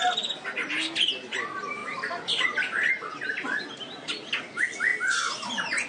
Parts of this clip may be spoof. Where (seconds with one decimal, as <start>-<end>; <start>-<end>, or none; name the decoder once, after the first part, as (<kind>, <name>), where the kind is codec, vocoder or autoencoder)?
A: none